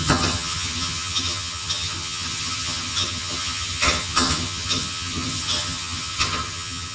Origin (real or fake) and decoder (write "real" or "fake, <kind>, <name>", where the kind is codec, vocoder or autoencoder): fake, vocoder, HiFi-GAN